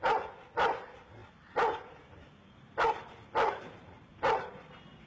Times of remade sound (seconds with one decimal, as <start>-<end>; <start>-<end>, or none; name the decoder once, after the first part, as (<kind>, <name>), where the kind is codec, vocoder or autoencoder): 1.2-3.3 (vocoder, BigVGAN v2); 4.1-5.1